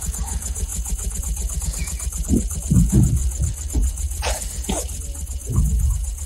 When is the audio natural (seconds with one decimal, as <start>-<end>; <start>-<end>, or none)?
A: 3.2-3.7